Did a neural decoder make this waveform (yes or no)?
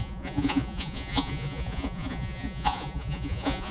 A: yes